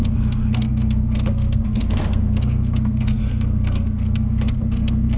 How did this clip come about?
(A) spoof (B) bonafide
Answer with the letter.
A